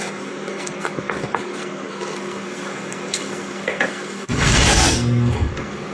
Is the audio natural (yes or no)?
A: no